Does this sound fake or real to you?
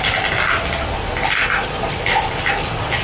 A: real